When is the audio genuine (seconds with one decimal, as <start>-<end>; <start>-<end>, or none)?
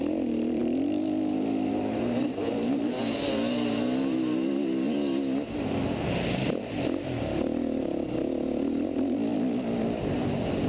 0.0-10.7